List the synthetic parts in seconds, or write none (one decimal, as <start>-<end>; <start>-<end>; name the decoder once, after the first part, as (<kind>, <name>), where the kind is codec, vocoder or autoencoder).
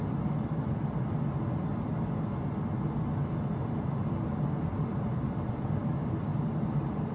4.9-5.5 (vocoder, BigVGAN v2)